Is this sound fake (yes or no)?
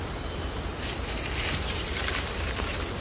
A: no